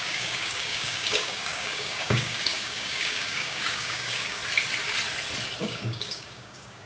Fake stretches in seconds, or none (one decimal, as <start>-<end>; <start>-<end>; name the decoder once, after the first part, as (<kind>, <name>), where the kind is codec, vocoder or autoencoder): 0.0-4.4 (codec, DAC); 5.6-6.9